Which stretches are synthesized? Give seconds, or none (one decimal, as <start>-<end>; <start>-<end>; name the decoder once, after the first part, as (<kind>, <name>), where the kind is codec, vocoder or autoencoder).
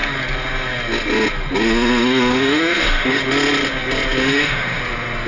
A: 2.3-3.2 (autoencoder, DAC-VAE); 4.2-4.8